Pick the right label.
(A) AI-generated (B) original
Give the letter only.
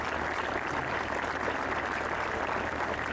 B